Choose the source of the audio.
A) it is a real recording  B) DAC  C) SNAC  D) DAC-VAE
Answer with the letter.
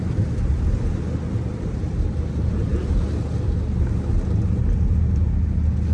A